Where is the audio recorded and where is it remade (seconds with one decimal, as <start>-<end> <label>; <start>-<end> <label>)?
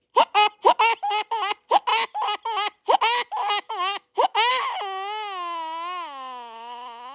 0.0-3.4 recorded; 3.4-4.5 remade; 4.5-7.1 recorded